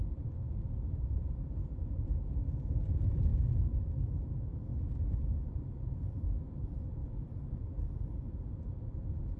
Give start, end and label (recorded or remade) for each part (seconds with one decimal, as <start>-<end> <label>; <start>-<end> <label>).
0.0-4.7 remade; 4.7-5.5 recorded; 5.5-7.0 remade; 7.0-8.6 recorded; 8.6-9.4 remade